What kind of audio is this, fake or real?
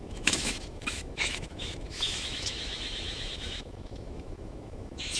fake